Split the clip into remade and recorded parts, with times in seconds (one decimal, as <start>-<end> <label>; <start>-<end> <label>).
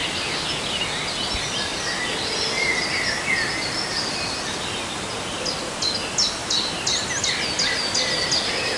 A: 0.0-8.8 recorded